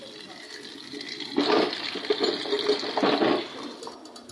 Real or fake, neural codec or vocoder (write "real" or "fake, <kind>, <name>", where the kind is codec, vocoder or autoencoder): real